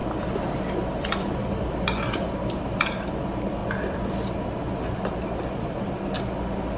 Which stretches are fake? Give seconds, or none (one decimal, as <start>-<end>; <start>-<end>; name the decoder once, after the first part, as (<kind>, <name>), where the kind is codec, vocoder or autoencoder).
0.0-2.8 (vocoder, BigVGAN v2)